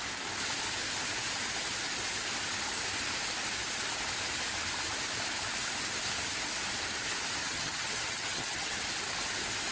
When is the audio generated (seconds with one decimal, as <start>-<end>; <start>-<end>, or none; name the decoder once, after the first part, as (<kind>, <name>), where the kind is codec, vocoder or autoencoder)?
7.4-8.8 (vocoder, HiFi-GAN)